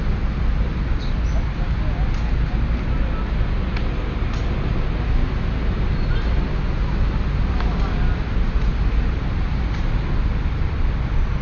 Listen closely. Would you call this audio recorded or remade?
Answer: recorded